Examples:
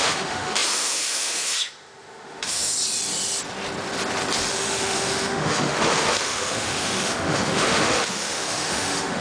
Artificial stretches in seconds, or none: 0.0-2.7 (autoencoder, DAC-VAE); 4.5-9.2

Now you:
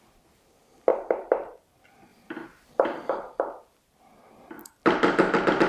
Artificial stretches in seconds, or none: 0.9-1.6 (vocoder, BigVGAN v2); 2.1-3.1

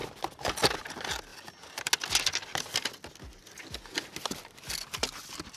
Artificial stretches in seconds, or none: none

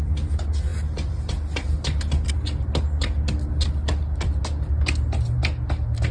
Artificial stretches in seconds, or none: none

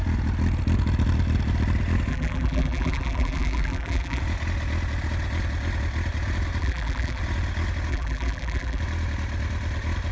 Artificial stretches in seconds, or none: 2.1-4.2 (vocoder, BigVGAN v2); 6.6-7.2; 7.9-8.8

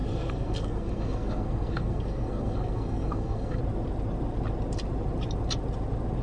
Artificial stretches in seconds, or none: 0.0-3.6 (codec, SNAC)

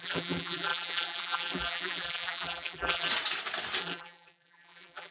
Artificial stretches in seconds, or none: 0.0-3.1 (vocoder, BigVGAN v2); 3.8-5.1